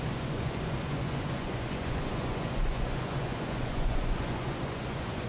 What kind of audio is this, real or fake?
fake